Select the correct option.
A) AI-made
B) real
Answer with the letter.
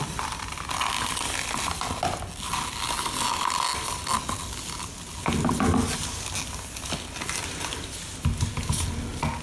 B